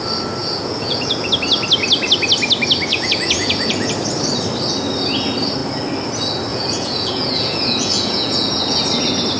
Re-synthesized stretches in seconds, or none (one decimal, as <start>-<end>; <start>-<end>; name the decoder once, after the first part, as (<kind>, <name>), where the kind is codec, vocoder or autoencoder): 0.4-1.3 (vocoder, Vocos); 2.9-3.9; 6.5-8.8